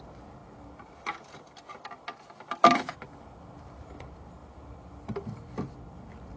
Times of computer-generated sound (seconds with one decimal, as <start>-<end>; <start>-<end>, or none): none

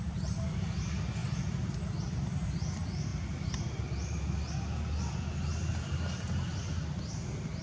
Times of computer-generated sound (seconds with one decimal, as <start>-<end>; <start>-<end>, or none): none

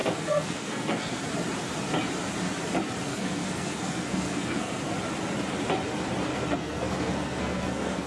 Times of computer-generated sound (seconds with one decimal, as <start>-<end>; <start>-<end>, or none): 0.0-1.2; 3.1-4.8; 6.3-8.1

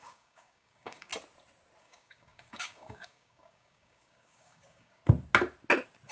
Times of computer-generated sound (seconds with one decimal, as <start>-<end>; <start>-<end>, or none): 0.0-1.1; 1.8-5.0